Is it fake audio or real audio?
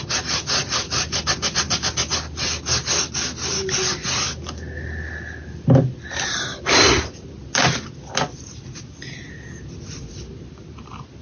real